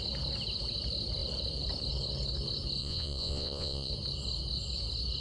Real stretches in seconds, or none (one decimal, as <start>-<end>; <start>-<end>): 0.0-2.8; 3.9-5.2